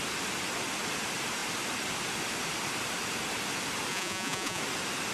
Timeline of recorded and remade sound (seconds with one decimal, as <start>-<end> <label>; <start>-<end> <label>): 0.0-3.9 recorded; 3.9-4.6 remade; 4.6-5.1 recorded